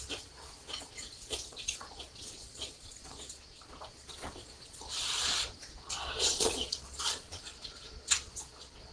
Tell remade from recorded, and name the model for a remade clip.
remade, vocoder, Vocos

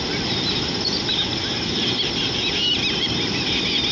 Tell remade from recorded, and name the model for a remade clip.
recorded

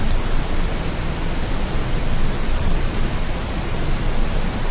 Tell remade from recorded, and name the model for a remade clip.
recorded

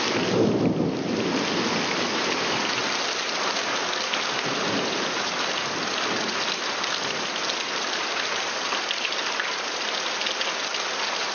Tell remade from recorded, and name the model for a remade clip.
recorded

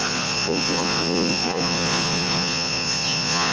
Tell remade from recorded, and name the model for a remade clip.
remade, vocoder, Vocos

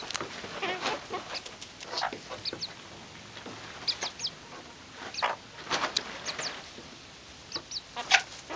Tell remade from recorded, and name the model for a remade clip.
recorded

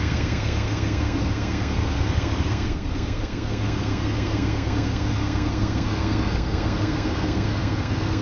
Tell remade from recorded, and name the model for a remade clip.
remade, codec, SNAC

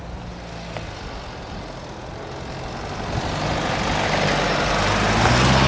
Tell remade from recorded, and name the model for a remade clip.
recorded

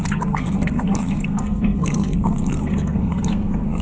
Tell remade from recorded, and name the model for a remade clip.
remade, codec, SNAC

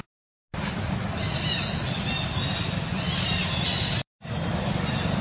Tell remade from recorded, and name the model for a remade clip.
recorded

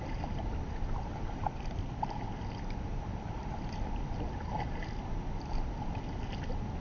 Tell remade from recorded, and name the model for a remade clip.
recorded